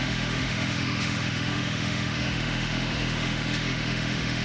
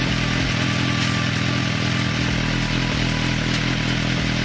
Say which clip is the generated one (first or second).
first